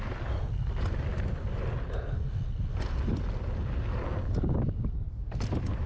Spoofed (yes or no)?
no